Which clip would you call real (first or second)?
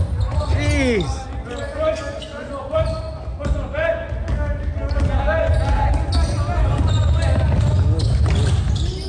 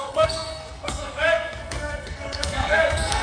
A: first